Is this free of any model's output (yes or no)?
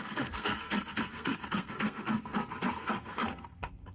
no